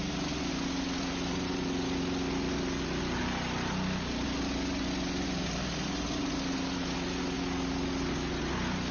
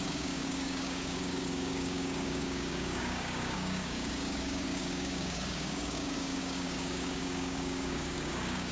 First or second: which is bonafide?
first